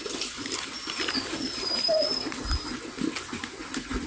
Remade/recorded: recorded